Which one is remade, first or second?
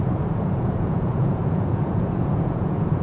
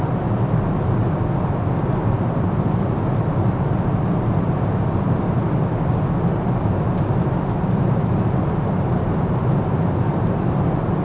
first